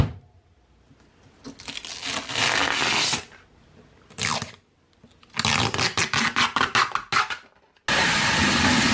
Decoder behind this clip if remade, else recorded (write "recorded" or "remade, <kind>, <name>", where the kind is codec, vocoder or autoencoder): recorded